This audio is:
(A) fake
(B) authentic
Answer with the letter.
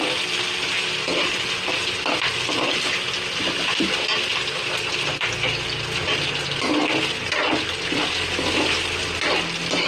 B